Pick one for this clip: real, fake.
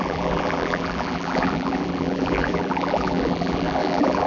fake